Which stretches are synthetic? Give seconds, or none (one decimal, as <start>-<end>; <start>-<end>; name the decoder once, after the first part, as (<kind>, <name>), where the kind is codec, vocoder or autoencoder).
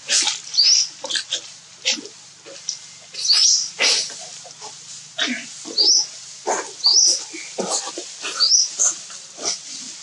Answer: none